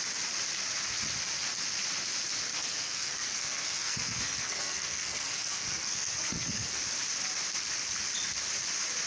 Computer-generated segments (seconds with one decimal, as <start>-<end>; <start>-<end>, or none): 2.5-6.8